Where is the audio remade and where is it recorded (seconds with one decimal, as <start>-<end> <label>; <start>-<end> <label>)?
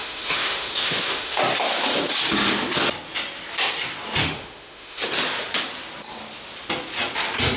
0.0-1.4 remade; 1.4-4.2 recorded; 4.2-5.0 remade; 5.0-7.6 recorded